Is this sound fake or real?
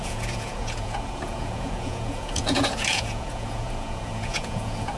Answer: fake